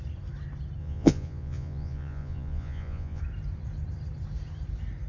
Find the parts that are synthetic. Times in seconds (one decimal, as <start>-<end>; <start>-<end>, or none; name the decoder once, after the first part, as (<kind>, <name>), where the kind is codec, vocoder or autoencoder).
0.8-3.2 (vocoder, Vocos)